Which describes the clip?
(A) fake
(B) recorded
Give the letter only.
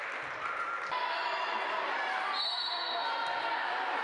B